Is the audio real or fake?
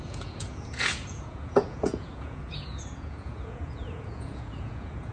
fake